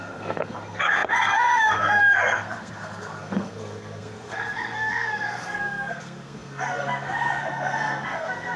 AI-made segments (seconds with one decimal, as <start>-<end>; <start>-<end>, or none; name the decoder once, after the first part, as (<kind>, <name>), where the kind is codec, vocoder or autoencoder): 0.0-8.6 (codec, SNAC)

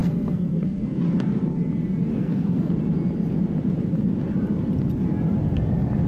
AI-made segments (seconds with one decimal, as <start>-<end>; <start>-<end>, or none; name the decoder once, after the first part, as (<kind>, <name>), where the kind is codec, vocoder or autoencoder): 0.0-1.0 (codec, SNAC); 2.1-2.7